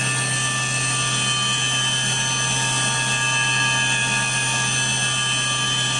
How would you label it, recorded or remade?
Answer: recorded